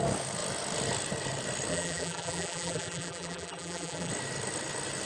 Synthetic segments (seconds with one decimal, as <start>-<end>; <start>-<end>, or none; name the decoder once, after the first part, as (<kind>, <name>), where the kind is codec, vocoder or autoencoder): 1.7-4.1 (vocoder, BigVGAN v2)